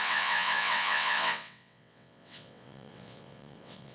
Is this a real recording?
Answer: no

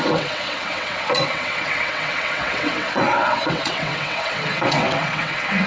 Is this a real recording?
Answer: no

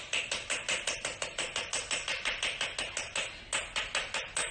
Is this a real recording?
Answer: yes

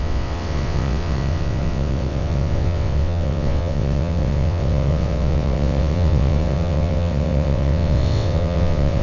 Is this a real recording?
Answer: no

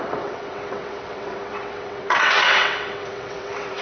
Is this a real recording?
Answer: no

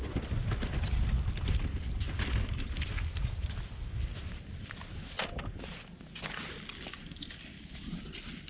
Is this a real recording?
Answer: yes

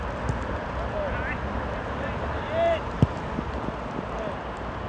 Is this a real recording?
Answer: yes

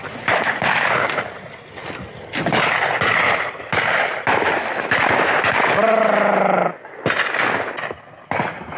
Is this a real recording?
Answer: yes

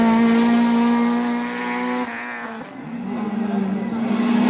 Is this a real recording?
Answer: yes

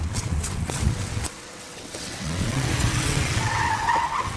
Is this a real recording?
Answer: no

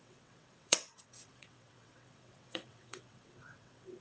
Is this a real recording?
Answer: no